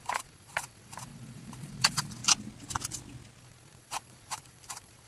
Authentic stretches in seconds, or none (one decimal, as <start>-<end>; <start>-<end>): 2.2-3.4